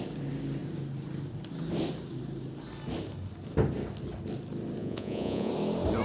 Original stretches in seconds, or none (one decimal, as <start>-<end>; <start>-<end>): 0.0-4.8; 5.5-6.0